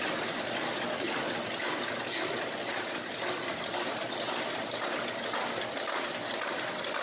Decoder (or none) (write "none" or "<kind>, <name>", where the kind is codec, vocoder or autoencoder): none